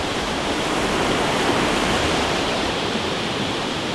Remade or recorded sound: remade